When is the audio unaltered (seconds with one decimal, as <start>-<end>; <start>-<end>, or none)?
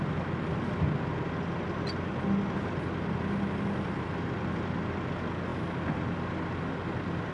0.0-7.3